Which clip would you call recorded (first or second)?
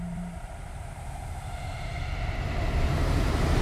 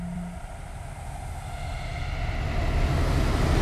second